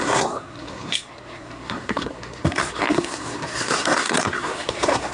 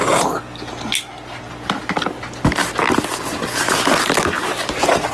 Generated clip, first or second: first